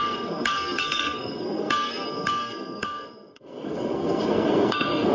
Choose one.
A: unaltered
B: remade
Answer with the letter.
B